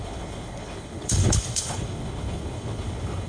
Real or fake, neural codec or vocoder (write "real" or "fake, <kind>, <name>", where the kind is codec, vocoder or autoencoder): fake, codec, HILCodec